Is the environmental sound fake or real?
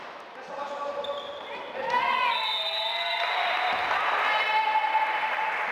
real